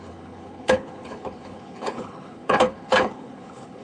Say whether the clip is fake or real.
fake